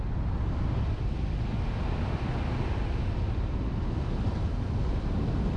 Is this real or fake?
real